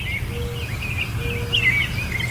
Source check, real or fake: real